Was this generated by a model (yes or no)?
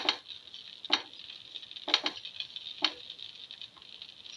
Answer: no